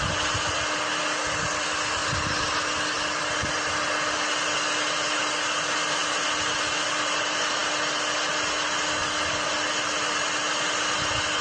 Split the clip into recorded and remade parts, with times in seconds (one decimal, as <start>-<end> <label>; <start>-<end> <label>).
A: 0.0-11.4 recorded